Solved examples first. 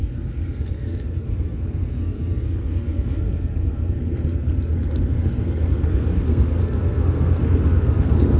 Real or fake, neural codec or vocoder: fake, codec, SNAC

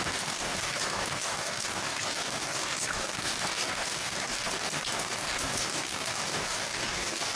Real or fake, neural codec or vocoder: fake, codec, DAC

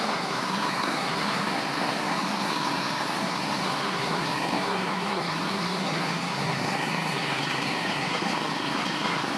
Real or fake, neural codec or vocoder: fake, codec, SNAC